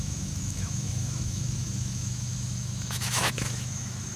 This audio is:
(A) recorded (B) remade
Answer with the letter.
B